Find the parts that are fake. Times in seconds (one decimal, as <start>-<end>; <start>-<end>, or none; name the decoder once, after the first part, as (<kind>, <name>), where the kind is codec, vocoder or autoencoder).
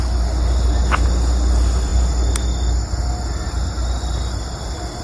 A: none